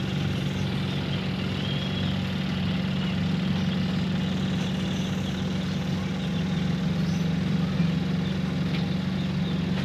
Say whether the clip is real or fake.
real